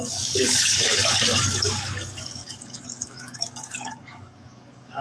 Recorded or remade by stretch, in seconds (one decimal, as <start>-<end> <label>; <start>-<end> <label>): 0.0-5.0 remade